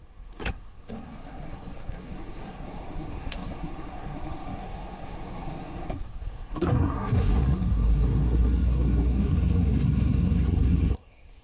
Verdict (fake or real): fake